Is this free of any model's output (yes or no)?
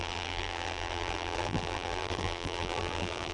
no